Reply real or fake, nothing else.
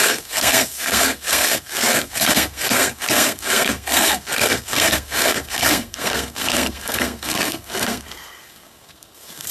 fake